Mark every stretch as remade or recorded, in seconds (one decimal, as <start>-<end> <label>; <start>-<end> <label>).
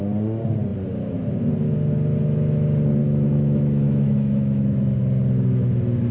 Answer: 0.0-3.0 recorded; 3.0-5.0 remade; 5.0-6.1 recorded